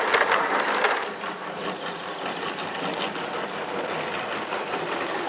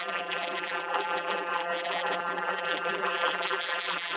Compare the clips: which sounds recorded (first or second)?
first